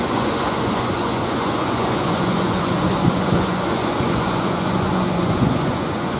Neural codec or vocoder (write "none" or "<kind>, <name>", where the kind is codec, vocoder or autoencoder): vocoder, Vocos